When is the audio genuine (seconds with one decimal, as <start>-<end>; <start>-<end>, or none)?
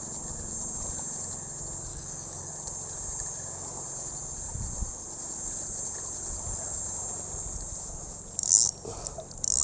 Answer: 0.0-1.9; 2.5-9.6